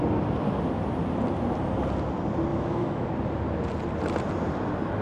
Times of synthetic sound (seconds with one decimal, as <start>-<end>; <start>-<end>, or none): 2.5-3.1

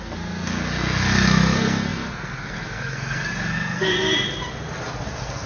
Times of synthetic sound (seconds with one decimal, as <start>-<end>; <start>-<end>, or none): 0.0-3.9; 5.0-5.5

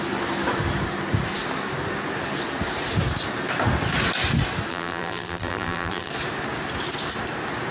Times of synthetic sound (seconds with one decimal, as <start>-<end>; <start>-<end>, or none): 4.7-6.1

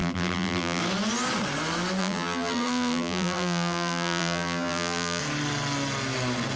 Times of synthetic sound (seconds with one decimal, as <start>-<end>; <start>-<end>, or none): 0.0-0.8; 2.0-5.2

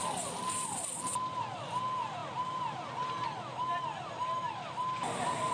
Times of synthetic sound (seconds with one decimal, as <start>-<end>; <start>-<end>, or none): none